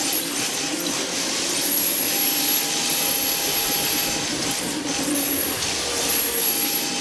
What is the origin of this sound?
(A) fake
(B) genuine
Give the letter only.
B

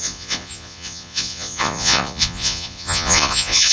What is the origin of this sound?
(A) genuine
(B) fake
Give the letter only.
B